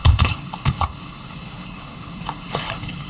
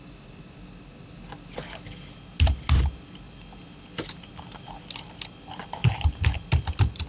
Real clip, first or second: second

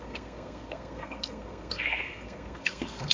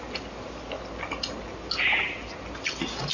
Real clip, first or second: second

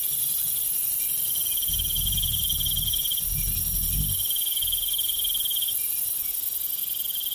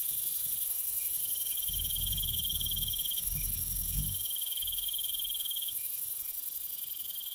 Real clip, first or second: first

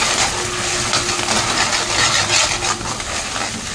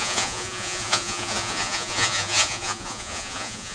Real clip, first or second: first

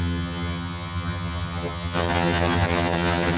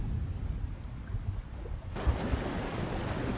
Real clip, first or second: second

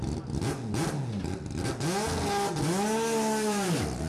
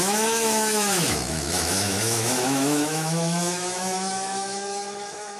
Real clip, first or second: first